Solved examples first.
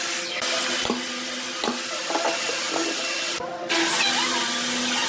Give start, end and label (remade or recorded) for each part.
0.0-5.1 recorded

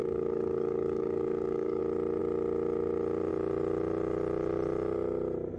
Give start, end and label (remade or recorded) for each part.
0.0-1.8 remade; 1.8-5.6 recorded

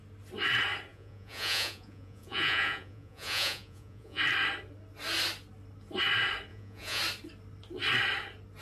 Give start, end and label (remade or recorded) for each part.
0.0-0.9 recorded; 0.9-4.2 remade; 4.2-6.5 recorded; 6.5-7.0 remade; 7.0-8.6 recorded

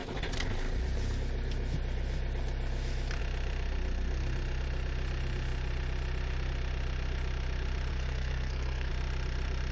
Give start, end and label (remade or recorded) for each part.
0.0-7.9 recorded; 7.9-8.9 remade; 8.9-9.7 recorded

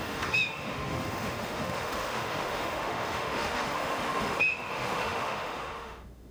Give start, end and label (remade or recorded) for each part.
0.0-6.3 remade

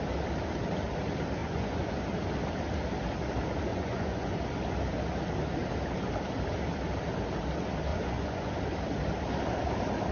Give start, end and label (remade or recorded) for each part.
0.0-1.4 recorded; 1.4-2.0 remade; 2.0-3.7 recorded; 3.7-4.4 remade; 4.4-7.9 recorded; 7.9-8.5 remade; 8.5-10.1 recorded